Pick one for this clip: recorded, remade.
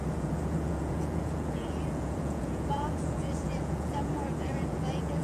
remade